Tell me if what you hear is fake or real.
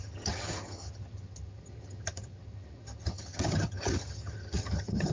fake